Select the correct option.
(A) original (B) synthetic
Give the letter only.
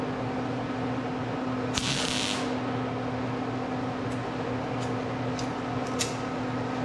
A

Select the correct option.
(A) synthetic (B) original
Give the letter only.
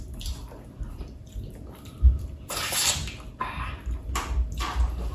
B